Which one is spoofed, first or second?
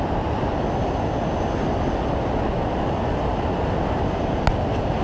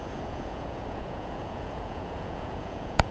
second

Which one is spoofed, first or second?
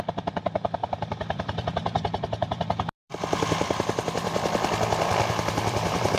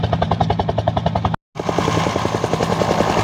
first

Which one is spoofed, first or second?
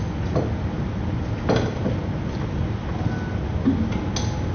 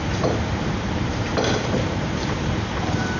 second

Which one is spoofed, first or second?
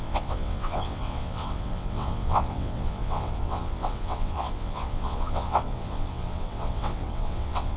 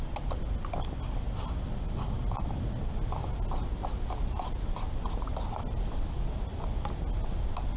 first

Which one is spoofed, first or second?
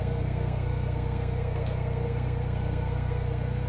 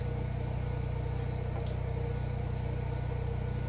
first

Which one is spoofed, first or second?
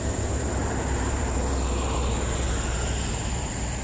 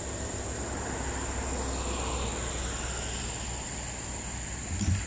first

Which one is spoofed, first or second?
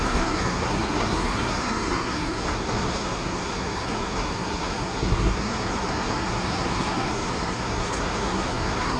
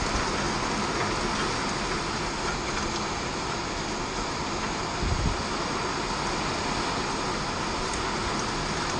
first